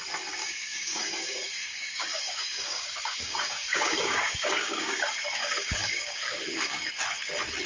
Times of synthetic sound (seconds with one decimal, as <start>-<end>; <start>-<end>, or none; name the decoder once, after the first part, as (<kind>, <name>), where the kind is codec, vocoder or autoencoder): 0.4-5.0 (codec, DAC); 5.4-6.9